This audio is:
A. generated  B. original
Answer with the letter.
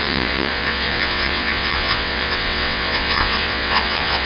A